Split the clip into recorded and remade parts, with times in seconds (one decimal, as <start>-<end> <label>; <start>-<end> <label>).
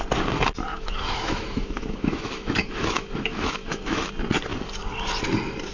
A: 0.0-0.7 recorded; 0.7-4.1 remade; 4.1-5.7 recorded